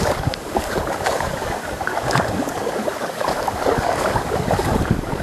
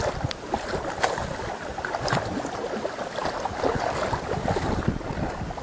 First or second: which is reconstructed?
first